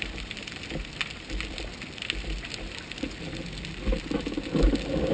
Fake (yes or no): no